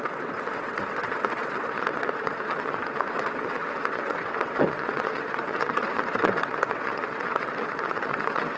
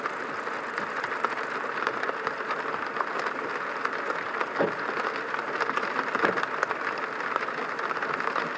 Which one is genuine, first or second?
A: second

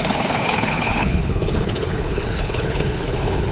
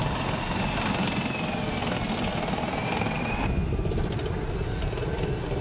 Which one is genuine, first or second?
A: second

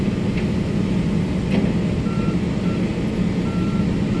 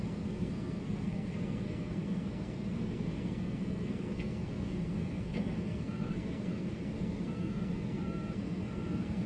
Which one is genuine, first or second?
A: first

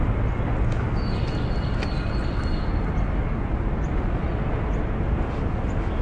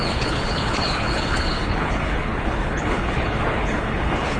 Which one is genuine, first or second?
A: first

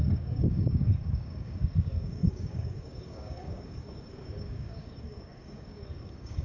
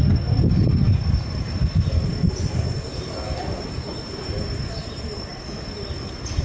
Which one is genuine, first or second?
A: second